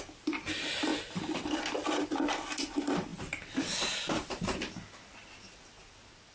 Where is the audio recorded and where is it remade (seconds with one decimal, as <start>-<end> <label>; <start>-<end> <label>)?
0.0-6.3 recorded